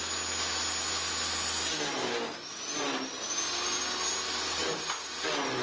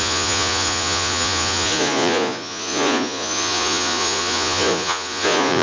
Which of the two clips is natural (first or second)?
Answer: first